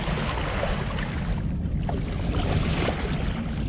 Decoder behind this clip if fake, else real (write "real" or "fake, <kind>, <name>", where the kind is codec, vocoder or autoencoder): real